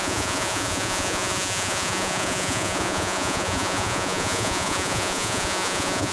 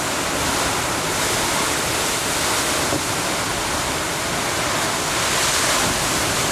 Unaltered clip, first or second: second